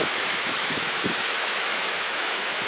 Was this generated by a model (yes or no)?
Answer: yes